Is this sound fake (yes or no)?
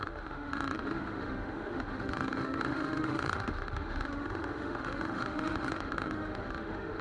yes